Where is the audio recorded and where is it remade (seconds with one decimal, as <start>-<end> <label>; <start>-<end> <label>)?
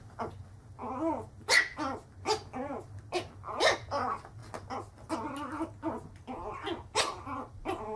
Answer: 0.0-8.0 recorded